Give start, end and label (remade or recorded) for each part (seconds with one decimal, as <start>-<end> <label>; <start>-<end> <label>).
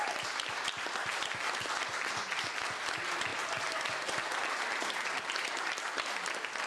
0.0-6.7 recorded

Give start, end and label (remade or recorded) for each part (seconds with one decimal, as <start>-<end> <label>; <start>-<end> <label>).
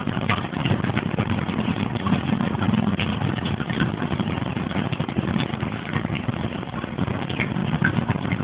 0.0-8.4 remade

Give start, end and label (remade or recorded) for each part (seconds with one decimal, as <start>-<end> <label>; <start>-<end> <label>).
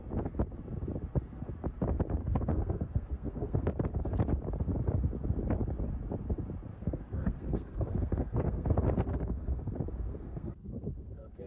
0.0-2.2 recorded; 2.2-3.7 remade; 3.7-6.7 recorded; 6.7-9.6 remade; 9.6-10.1 recorded; 10.1-11.5 remade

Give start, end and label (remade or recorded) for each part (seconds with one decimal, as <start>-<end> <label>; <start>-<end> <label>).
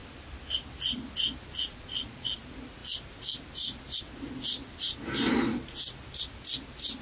0.0-1.7 recorded; 1.7-2.4 remade; 2.4-7.0 recorded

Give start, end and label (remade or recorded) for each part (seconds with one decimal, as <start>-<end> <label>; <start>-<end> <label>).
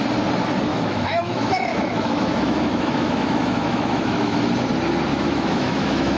0.0-0.7 recorded; 0.7-4.4 remade; 4.4-5.1 recorded; 5.1-6.2 remade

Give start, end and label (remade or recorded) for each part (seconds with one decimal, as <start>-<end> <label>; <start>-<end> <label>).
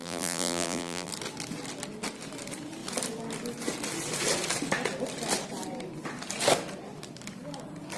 0.0-1.1 remade; 1.1-8.0 recorded